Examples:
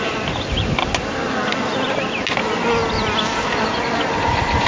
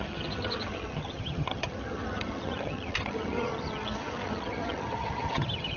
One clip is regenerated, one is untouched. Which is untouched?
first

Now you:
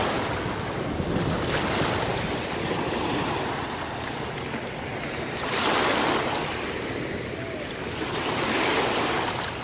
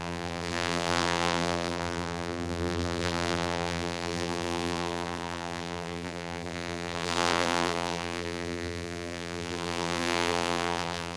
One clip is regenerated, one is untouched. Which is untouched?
first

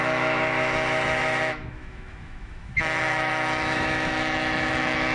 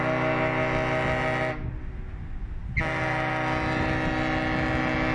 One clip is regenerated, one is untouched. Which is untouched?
second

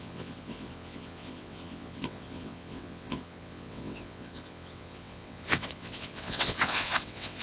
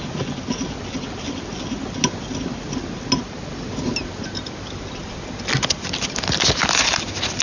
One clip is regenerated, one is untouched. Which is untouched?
second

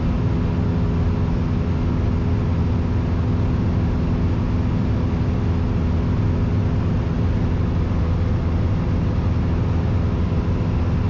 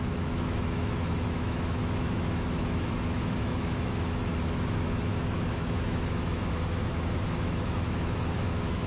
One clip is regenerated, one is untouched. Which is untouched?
first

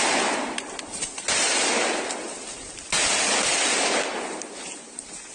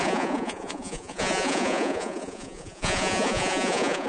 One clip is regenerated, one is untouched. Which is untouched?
first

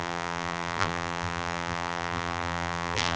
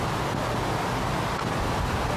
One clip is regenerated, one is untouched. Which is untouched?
second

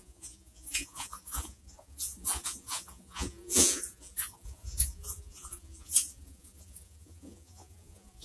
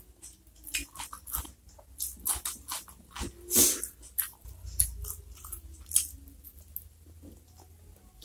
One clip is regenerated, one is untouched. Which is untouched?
second